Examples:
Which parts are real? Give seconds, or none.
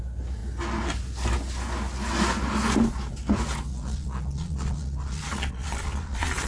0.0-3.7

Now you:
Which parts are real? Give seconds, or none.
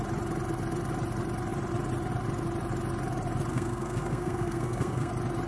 0.0-3.5; 5.1-5.5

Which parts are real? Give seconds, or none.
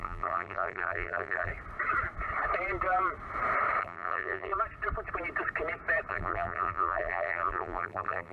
1.5-3.8; 4.5-6.1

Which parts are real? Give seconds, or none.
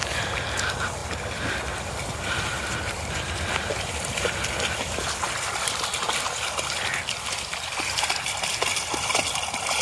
0.0-9.8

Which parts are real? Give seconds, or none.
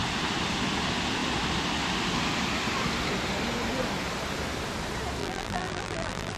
0.0-5.2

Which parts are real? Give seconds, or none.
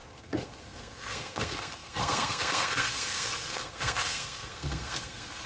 none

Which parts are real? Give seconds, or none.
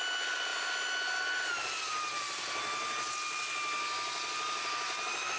0.0-5.4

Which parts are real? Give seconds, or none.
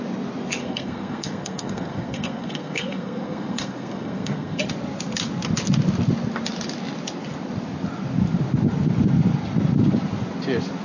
0.0-0.6; 4.6-10.8